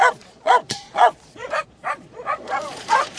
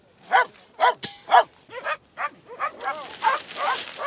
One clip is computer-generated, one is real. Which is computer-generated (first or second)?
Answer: first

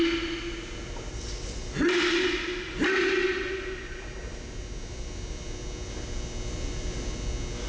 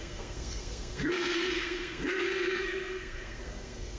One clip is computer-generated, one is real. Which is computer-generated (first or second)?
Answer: second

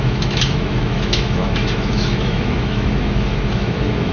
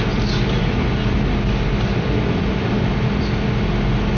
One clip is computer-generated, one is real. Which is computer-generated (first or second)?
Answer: first